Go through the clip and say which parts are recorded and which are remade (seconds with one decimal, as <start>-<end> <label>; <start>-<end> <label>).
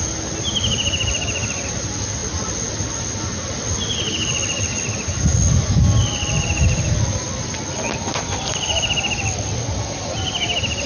0.0-10.9 recorded